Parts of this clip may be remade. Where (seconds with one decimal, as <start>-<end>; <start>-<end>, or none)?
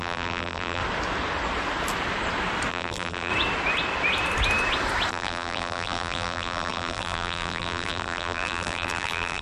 0.0-0.8; 2.7-3.3; 5.1-9.4